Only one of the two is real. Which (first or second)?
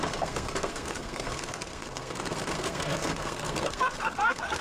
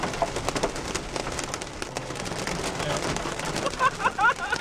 second